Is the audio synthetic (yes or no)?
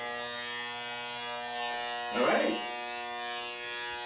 no